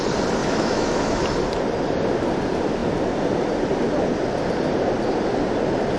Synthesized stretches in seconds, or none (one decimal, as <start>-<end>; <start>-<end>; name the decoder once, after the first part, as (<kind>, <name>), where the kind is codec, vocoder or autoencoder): 0.4-1.2 (autoencoder, DAC-VAE)